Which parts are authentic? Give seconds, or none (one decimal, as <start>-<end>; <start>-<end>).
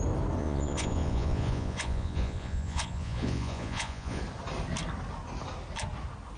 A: 0.0-0.4; 4.2-6.4